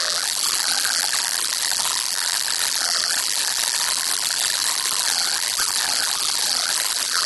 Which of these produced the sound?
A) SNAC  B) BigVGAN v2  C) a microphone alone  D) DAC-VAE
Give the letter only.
B